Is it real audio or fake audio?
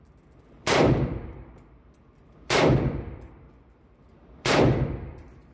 fake